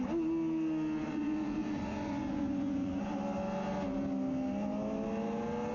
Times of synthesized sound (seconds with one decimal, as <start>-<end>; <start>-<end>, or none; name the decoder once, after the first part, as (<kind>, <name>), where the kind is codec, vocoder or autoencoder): 1.0-3.1 (vocoder, Vocos)